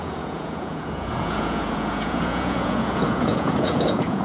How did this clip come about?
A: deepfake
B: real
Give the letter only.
A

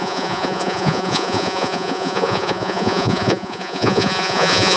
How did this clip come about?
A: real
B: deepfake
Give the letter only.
B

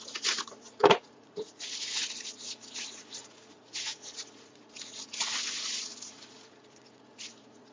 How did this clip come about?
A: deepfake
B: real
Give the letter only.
A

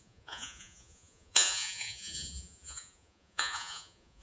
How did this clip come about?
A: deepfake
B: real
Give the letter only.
A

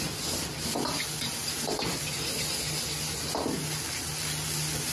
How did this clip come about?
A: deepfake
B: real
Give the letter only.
B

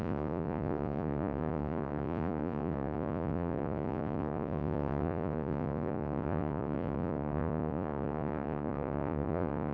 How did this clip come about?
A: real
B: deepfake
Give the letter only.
B